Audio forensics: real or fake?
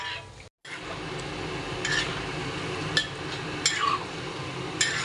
real